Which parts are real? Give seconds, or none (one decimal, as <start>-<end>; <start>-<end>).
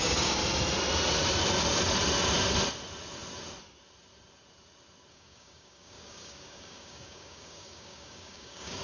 0.4-5.1